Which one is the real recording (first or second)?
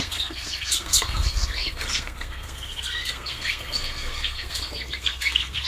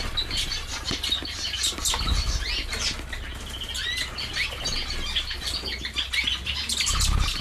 second